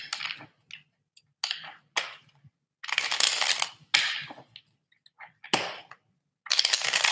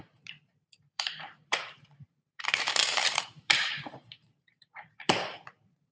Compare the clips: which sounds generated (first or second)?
second